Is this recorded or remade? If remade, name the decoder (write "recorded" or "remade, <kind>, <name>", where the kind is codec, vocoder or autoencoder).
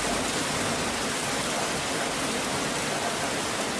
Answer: recorded